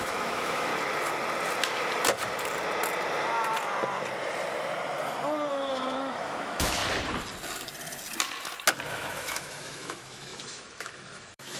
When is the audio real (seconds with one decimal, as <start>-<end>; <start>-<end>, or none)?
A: 0.7-5.5; 6.8-8.9